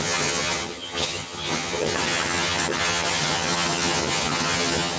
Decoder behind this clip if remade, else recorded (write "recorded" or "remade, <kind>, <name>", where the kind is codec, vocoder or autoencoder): remade, vocoder, HiFi-GAN